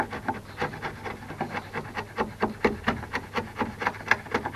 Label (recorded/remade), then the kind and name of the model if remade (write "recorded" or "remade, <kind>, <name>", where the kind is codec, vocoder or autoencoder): recorded